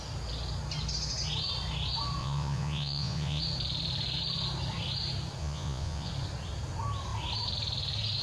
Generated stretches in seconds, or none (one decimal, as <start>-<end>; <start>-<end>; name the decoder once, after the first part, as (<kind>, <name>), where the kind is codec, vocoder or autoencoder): 2.2-3.4 (vocoder, Vocos); 5.4-6.1